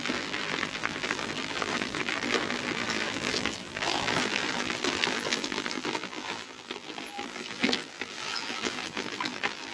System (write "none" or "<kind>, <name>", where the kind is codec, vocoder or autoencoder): vocoder, BigVGAN v2